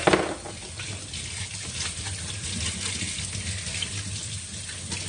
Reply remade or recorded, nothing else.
recorded